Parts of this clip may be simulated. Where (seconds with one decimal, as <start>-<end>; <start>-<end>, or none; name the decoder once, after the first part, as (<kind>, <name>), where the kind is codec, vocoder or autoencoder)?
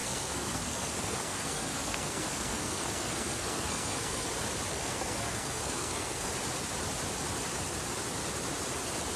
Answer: 0.0-4.3 (codec, SNAC); 4.7-6.3